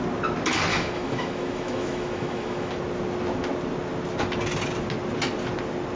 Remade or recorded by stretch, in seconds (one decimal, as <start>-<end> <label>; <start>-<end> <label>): 0.0-0.7 recorded; 0.7-2.7 remade; 2.7-6.0 recorded